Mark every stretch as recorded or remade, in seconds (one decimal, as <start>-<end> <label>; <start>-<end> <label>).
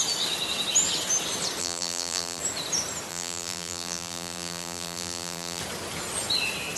0.0-1.6 recorded; 1.6-2.4 remade; 2.4-3.1 recorded; 3.1-5.6 remade; 5.6-6.8 recorded